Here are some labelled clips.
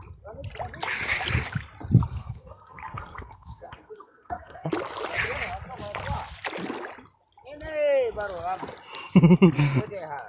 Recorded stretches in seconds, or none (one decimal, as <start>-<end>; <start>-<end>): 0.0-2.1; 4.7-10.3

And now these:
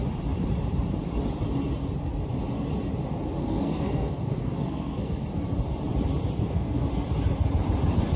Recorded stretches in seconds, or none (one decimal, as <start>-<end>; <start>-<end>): 0.0-3.4; 5.2-6.4; 6.9-8.2

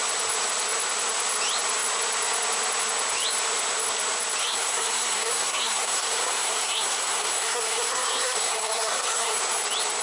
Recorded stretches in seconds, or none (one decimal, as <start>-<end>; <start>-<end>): 0.0-4.4; 9.4-10.0

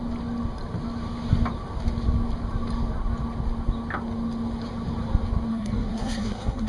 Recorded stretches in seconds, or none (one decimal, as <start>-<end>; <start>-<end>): 0.0-5.5

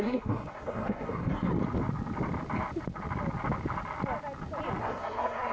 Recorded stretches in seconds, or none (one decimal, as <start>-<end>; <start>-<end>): 1.5-4.8

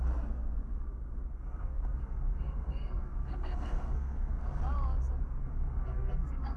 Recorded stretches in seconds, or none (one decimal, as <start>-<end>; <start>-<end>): 0.0-0.6; 4.6-5.4